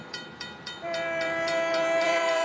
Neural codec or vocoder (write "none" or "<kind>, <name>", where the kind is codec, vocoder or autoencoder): vocoder, BigVGAN v2